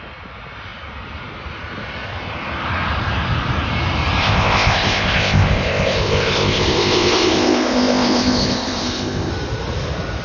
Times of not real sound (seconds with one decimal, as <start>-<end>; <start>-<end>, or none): 4.2-9.3